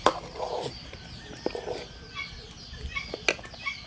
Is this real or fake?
real